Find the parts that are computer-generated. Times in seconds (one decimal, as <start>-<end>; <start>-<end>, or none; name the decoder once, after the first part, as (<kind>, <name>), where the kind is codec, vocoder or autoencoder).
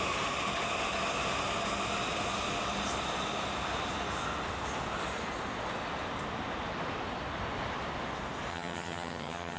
8.5-9.6 (vocoder, HiFi-GAN)